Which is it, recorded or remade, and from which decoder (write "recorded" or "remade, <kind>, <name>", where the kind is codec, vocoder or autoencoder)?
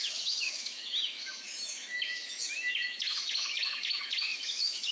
remade, autoencoder, DAC-VAE